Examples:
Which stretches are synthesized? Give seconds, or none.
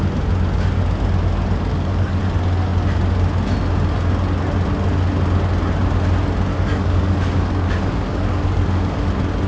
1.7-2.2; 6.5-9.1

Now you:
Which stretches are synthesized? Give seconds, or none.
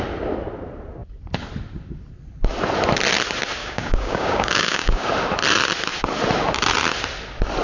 3.6-5.1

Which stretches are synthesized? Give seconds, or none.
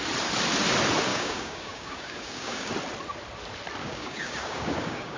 1.1-2.7; 3.8-5.2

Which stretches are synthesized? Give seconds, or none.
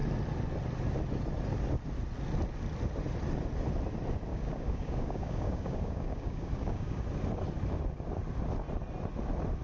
4.3-7.0